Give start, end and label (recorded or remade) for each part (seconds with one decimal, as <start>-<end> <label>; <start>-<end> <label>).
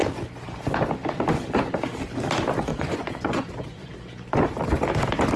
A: 0.0-2.7 recorded; 2.7-3.9 remade; 3.9-5.4 recorded